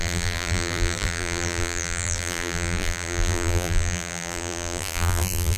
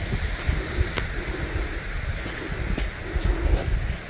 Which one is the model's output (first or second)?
first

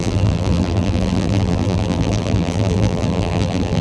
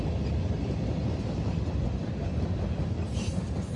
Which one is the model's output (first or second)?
first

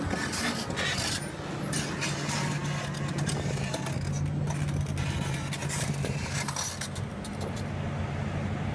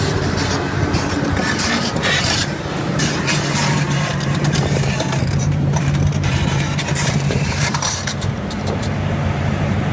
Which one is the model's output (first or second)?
second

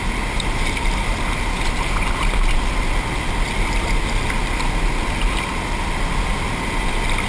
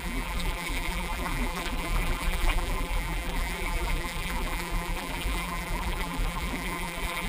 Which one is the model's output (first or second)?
second